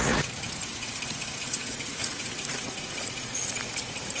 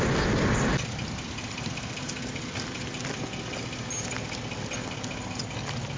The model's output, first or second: first